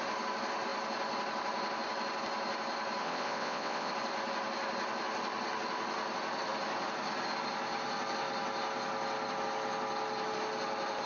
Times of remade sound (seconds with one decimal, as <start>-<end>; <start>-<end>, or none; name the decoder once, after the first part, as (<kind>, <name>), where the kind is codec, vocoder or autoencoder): 3.0-3.9 (vocoder, WaveNeXt)

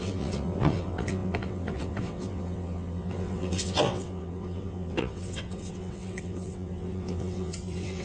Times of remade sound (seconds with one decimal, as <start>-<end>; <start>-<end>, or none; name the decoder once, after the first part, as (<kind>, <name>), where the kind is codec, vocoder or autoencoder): 0.0-8.0 (vocoder, WaveNeXt)

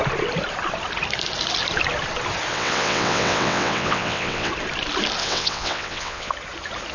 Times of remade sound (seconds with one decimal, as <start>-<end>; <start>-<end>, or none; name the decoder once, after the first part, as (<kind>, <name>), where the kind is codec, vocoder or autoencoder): 2.5-4.5 (vocoder, WaveNeXt); 5.2-6.3

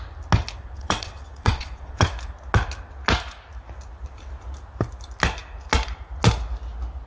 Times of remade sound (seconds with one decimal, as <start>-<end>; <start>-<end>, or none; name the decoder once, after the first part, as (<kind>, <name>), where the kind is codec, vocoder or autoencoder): 0.6-2.1 (vocoder, WaveNeXt)